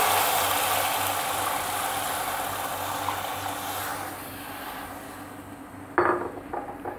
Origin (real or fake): real